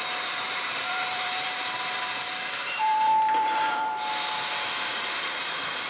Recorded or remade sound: remade